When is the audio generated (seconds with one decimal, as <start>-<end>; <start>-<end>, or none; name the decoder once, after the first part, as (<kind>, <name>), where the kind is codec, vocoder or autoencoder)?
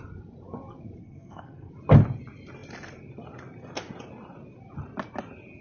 1.0-1.7 (codec, SNAC)